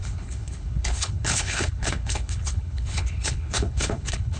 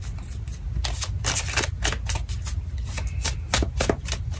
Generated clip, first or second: first